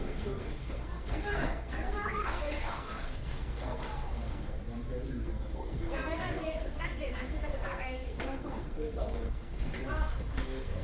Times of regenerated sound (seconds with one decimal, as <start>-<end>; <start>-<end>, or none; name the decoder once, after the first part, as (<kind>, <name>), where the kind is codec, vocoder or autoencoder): 0.0-4.6 (codec, SNAC); 5.1-10.8